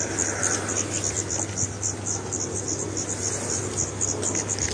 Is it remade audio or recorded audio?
recorded